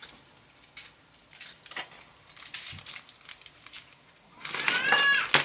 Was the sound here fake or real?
real